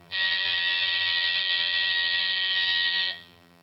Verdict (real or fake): fake